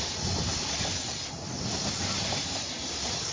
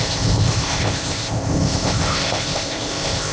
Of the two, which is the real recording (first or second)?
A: first